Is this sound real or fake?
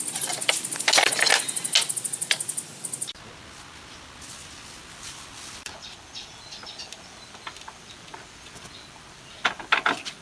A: real